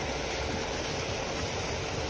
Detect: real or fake real